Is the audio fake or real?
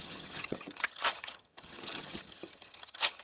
fake